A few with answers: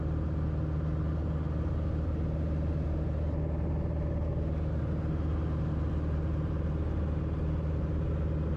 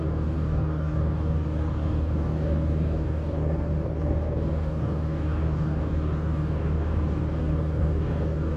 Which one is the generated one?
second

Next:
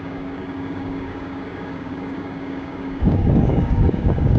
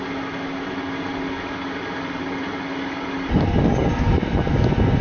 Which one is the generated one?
first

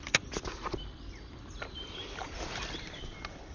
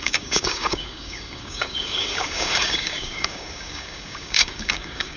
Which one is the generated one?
second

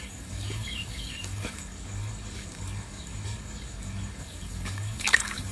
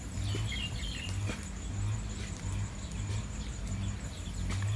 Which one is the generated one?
first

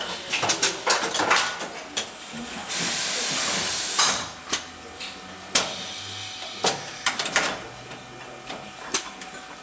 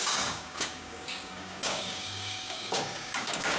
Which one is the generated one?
second